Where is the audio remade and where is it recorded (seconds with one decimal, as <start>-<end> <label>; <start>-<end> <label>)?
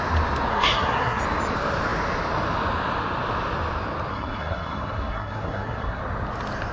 0.0-0.5 recorded; 0.5-1.2 remade; 1.2-4.1 recorded; 4.1-6.0 remade; 6.0-6.7 recorded